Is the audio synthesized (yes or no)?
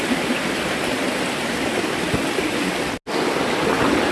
no